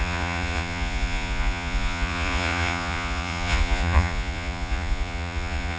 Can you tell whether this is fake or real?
fake